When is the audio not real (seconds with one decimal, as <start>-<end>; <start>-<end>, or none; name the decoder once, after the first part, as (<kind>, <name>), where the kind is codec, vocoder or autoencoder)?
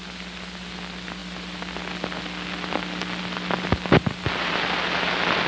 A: none